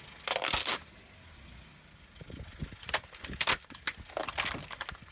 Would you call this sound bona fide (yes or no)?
yes